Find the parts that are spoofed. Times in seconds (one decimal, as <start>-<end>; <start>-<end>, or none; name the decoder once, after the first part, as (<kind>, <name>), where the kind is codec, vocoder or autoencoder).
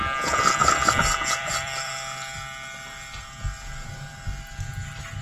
0.6-1.9 (vocoder, BigVGAN v2)